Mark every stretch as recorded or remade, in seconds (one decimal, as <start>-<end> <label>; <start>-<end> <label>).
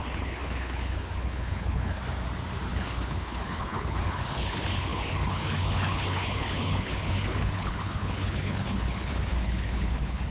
0.0-2.0 remade; 2.0-2.7 recorded; 2.7-10.3 remade